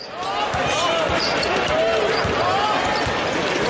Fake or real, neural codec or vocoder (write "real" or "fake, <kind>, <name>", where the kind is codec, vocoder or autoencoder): real